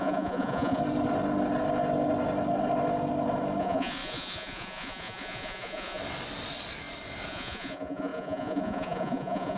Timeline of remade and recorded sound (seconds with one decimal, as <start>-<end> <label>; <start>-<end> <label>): 0.0-0.8 remade; 0.8-3.6 recorded; 3.6-6.0 remade; 6.0-7.3 recorded; 7.3-9.6 remade

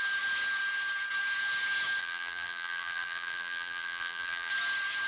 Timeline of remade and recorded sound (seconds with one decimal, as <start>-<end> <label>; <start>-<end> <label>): 0.0-2.0 recorded; 2.0-4.5 remade; 4.5-5.1 recorded

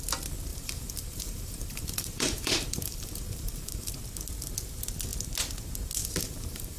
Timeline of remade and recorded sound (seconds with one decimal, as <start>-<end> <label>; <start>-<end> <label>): 0.0-0.5 recorded; 0.5-3.9 remade; 3.9-6.0 recorded; 6.0-6.8 remade

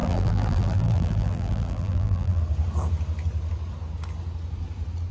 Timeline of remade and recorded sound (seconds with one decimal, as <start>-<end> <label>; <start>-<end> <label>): 0.0-2.4 remade; 2.4-5.1 recorded

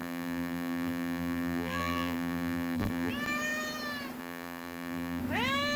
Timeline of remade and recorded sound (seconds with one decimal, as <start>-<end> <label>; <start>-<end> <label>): 0.0-3.1 remade; 3.1-4.2 recorded; 4.2-5.2 remade; 5.2-5.8 recorded